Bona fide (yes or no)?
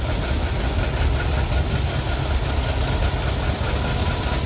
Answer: yes